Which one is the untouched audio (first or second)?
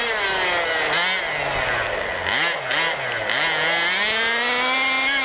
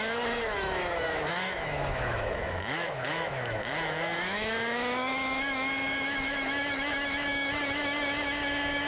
first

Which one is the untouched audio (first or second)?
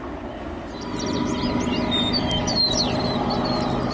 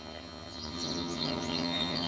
first